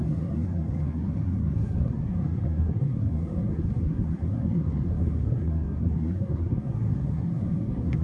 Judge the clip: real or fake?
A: fake